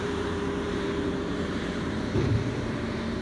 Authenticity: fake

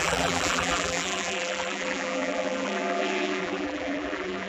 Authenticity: fake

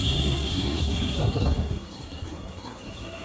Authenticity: fake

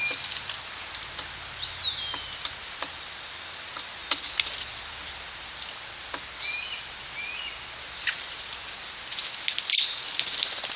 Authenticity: real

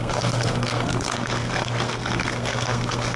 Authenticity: fake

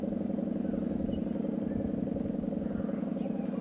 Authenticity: real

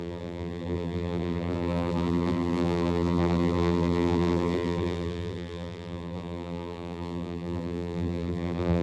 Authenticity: fake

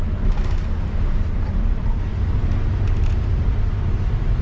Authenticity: real